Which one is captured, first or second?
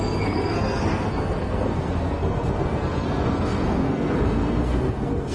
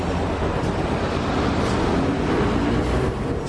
second